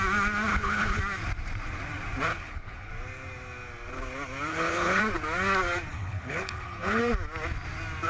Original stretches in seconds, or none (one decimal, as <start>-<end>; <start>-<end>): 0.0-0.5; 1.0-2.3; 2.9-4.5; 5.0-5.9; 7.0-8.1